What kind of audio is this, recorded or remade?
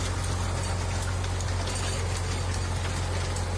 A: recorded